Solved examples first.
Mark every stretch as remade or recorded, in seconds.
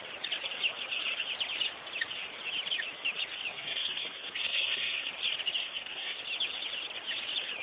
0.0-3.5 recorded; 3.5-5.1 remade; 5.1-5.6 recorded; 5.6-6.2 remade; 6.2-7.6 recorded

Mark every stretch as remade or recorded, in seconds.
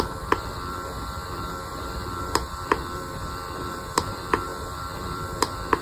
0.0-5.8 remade